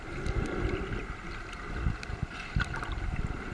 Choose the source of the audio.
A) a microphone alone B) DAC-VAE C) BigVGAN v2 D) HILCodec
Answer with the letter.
A